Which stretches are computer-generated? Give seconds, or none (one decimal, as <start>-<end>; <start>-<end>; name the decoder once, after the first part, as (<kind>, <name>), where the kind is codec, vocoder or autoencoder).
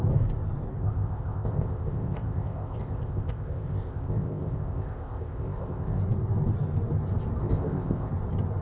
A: 0.8-6.0 (codec, ZipCodec); 7.4-8.1